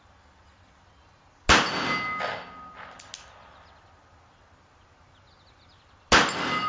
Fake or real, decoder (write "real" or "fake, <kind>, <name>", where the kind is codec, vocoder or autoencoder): real